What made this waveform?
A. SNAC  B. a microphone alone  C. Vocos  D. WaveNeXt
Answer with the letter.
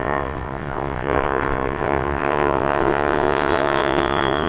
D